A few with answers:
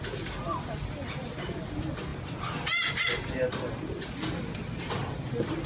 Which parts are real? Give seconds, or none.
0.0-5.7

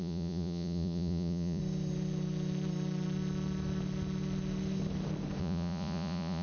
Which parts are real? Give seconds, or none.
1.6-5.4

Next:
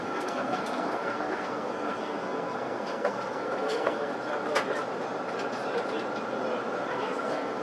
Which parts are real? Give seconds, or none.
4.1-6.9